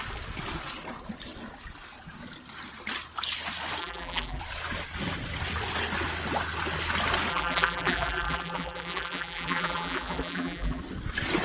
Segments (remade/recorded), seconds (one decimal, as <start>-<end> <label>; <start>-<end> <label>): 0.0-3.8 recorded; 3.8-4.4 remade; 4.4-7.3 recorded; 7.3-10.8 remade; 10.8-11.4 recorded